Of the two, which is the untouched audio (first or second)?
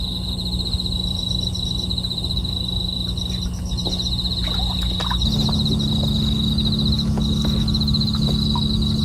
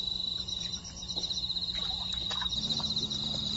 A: first